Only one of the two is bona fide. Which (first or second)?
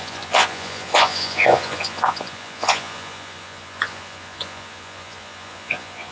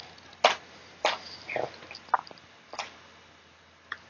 second